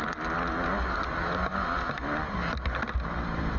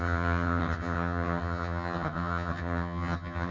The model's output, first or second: second